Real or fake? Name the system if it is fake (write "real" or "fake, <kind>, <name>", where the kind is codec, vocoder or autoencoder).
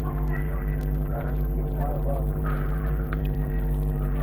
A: fake, vocoder, BigVGAN v2